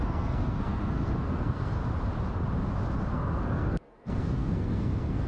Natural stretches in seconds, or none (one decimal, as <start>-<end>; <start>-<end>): 1.8-3.1